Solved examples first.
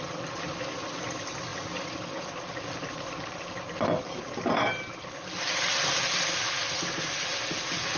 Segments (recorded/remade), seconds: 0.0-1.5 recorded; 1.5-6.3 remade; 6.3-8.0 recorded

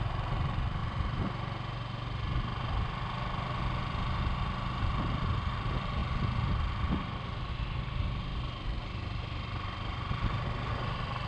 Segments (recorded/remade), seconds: 0.0-0.8 remade; 0.8-4.8 recorded; 4.8-6.0 remade; 6.0-7.5 recorded; 7.5-8.3 remade; 8.3-9.9 recorded; 9.9-11.3 remade